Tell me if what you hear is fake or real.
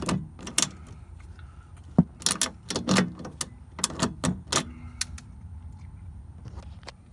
real